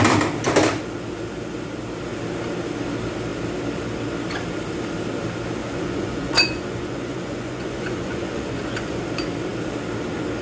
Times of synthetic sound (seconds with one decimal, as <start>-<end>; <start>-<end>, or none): 5.6-9.0